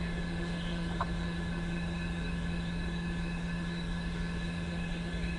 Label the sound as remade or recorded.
remade